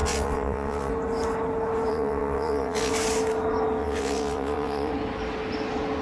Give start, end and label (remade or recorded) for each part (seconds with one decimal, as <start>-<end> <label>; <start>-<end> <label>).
0.0-0.9 remade; 0.9-1.9 recorded; 1.9-2.9 remade; 2.9-3.8 recorded; 3.8-4.9 remade; 4.9-6.0 recorded